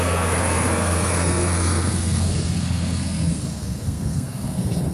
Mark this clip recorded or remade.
remade